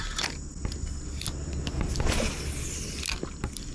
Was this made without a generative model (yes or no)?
yes